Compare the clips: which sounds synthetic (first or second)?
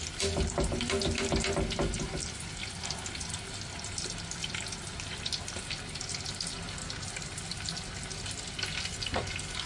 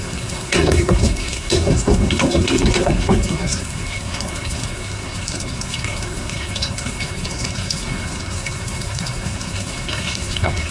second